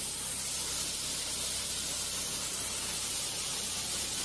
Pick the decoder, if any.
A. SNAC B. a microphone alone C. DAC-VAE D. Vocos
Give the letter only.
B